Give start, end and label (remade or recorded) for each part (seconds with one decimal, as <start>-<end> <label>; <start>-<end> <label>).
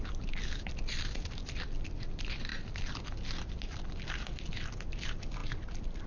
0.0-6.1 recorded